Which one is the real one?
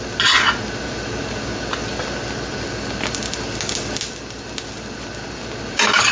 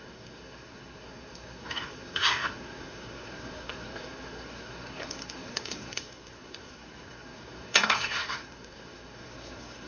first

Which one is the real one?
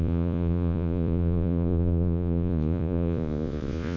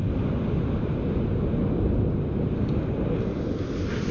second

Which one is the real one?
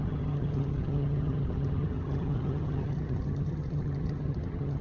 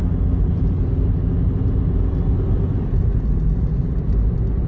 second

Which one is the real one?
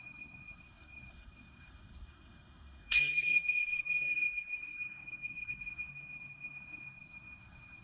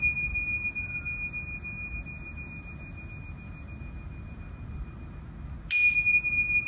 second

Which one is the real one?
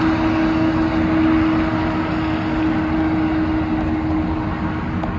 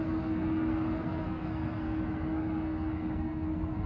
first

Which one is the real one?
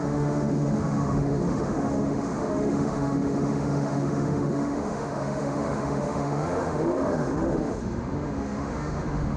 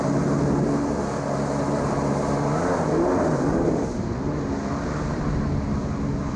second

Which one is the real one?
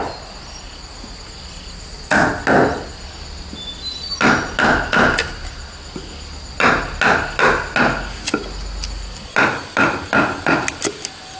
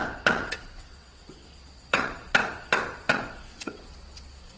first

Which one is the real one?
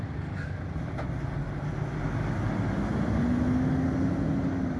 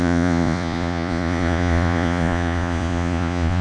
first